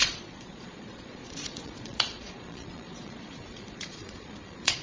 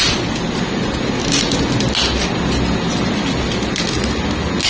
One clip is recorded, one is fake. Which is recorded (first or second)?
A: second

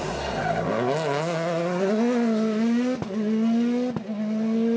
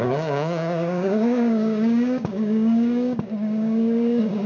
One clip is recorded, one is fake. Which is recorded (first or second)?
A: first